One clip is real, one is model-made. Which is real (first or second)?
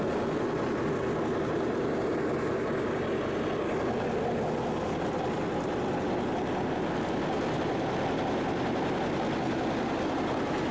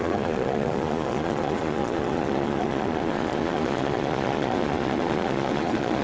first